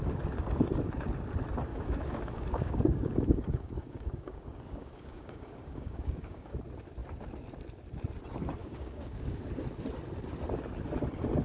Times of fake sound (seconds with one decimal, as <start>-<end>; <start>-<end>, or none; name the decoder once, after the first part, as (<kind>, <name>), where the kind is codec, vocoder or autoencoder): 1.7-6.5 (codec, DAC); 8.6-9.4